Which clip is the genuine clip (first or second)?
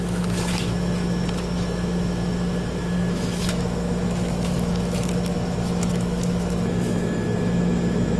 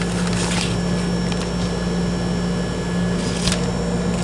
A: second